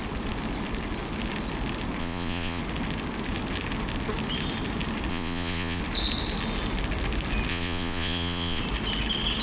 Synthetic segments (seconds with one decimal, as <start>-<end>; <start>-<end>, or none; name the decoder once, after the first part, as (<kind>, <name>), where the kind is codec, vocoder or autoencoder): 2.0-2.6 (vocoder, Vocos); 5.1-5.8; 7.5-8.6